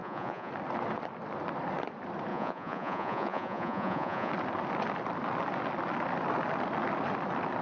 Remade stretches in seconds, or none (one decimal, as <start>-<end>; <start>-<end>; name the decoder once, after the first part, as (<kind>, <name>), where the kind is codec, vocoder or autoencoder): 0.0-0.5 (vocoder, Vocos); 2.3-4.3